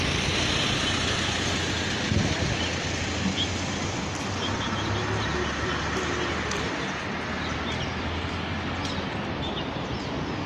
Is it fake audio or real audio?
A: real